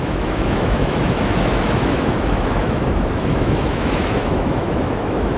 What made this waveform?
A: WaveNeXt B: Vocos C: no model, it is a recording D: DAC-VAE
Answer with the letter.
D